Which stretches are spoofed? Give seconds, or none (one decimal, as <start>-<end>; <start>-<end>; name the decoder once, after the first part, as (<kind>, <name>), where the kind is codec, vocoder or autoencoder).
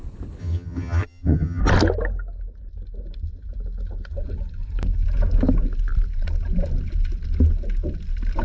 0.4-1.6 (vocoder, HiFi-GAN)